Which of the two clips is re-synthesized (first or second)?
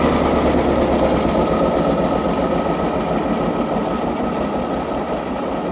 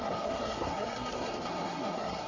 second